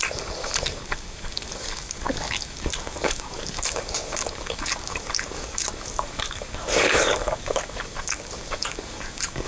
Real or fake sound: fake